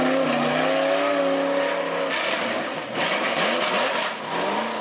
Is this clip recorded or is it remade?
recorded